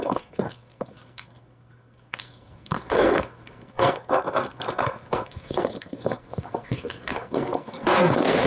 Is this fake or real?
fake